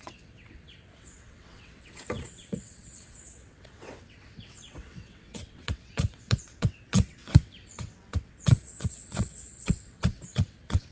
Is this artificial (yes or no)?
yes